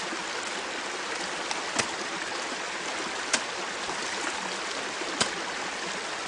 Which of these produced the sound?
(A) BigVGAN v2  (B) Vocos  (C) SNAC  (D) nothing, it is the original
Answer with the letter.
D